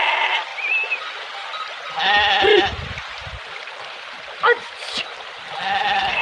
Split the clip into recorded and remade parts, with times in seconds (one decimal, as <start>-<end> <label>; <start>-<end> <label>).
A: 0.0-6.2 recorded